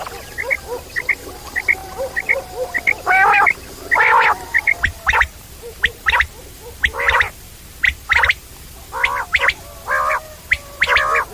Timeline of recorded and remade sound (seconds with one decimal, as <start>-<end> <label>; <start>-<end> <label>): 0.0-1.8 recorded; 1.8-2.5 remade; 2.5-4.5 recorded; 4.5-7.7 remade; 7.7-10.1 recorded; 10.1-10.8 remade; 10.8-11.3 recorded